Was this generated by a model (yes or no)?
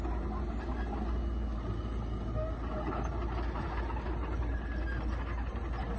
no